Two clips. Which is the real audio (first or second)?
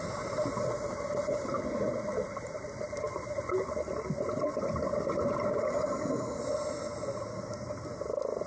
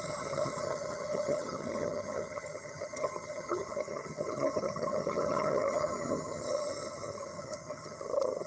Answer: first